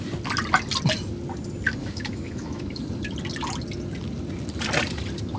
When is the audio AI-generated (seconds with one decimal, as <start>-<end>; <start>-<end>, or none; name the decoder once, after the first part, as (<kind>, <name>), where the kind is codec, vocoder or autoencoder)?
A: 1.8-2.8 (autoencoder, DAC-VAE)